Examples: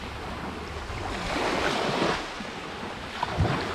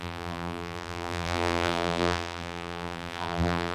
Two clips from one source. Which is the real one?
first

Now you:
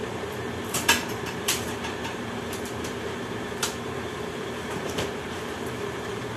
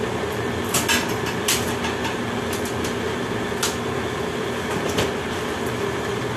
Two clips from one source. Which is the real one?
second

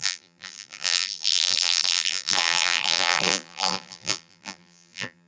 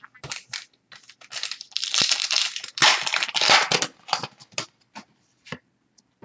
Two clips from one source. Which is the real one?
second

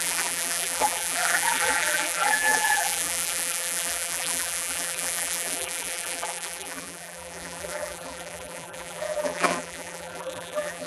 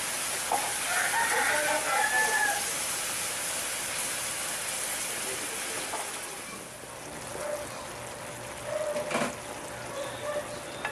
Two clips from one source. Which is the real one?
second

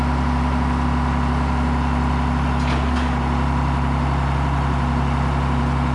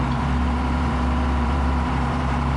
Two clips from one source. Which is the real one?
first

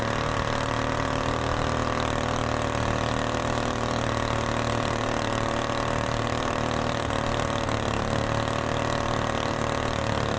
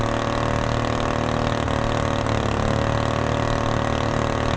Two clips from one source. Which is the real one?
second